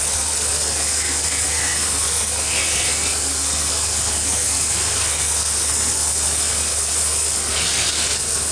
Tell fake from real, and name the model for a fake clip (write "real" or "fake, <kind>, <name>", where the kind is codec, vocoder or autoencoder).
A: fake, codec, SNAC